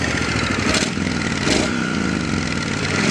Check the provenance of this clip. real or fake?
fake